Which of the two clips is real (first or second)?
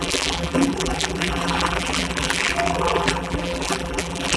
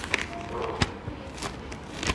second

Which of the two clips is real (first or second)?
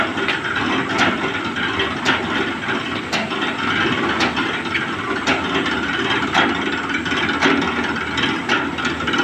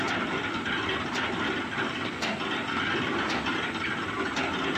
first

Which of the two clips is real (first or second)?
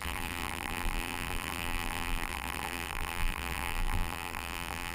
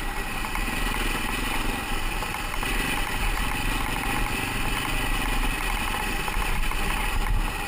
second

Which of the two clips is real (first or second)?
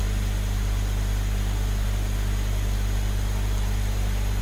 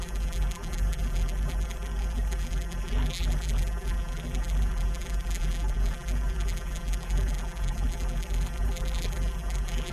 first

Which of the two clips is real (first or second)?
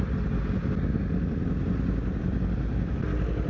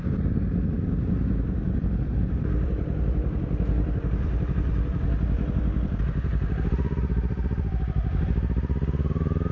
first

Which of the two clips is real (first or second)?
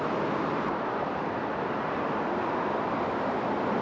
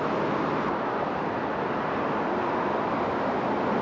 second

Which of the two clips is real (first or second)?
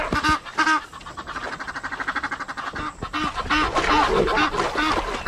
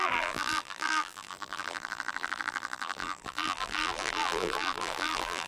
first